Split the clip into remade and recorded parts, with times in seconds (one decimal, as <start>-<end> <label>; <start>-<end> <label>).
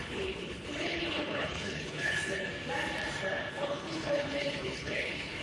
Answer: 0.0-2.5 remade; 2.5-3.5 recorded; 3.5-5.4 remade